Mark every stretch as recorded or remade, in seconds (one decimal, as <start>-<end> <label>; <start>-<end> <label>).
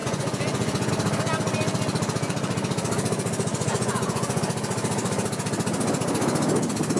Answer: 0.0-0.9 remade; 0.9-3.5 recorded; 3.5-4.4 remade; 4.4-7.0 recorded